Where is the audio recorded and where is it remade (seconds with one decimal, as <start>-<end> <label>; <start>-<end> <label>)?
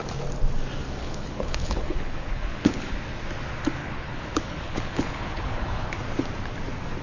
0.0-1.0 recorded; 1.0-2.9 remade; 2.9-3.8 recorded; 3.8-6.0 remade; 6.0-7.0 recorded